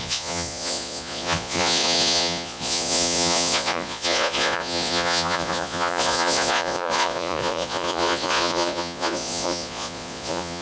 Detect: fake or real fake